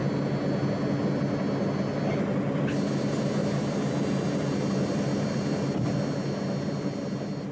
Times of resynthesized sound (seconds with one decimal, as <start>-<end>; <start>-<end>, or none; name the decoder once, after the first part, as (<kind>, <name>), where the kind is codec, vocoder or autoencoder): none